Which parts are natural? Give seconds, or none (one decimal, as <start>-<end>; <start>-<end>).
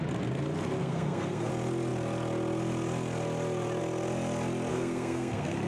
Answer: 0.0-0.8; 1.5-4.7